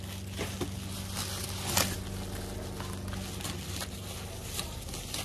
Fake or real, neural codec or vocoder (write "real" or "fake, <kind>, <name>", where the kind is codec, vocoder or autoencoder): real